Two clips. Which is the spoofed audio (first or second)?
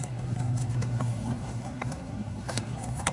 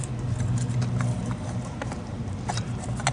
first